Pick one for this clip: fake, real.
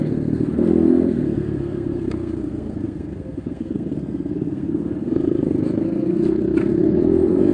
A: fake